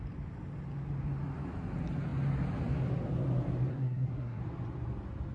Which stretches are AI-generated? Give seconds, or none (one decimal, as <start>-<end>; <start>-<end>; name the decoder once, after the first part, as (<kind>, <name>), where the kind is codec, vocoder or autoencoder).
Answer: 3.7-4.4 (codec, SNAC)